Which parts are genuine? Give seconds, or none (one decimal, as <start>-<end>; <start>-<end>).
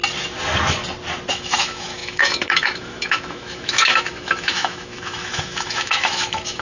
0.0-1.3